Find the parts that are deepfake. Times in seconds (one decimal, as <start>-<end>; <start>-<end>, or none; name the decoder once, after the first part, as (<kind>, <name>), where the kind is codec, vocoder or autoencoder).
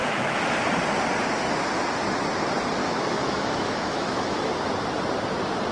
0.0-0.5 (autoencoder, DAC-VAE); 2.8-4.5